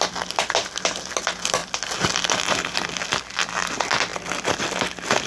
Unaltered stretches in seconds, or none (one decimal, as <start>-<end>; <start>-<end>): 0.0-0.6; 1.2-5.3